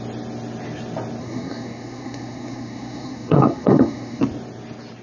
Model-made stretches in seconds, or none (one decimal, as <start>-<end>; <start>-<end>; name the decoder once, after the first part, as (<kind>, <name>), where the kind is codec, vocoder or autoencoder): 1.2-4.2 (codec, SNAC)